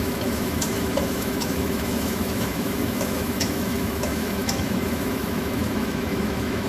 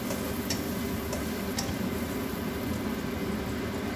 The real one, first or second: second